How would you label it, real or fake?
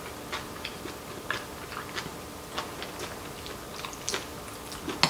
real